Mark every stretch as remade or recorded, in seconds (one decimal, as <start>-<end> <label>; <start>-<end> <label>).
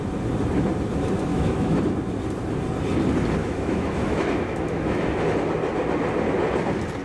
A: 0.0-1.3 recorded; 1.3-1.8 remade; 1.8-3.4 recorded; 3.4-5.1 remade; 5.1-7.0 recorded